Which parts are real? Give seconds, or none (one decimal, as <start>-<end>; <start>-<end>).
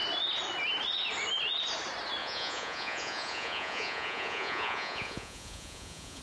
0.0-2.2